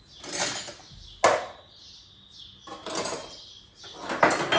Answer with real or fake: real